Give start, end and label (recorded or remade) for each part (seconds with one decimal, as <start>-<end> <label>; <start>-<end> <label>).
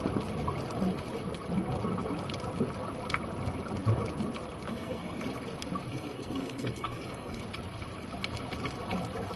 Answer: 0.0-4.7 recorded; 4.7-5.2 remade; 5.2-5.9 recorded; 5.9-7.4 remade; 7.4-9.4 recorded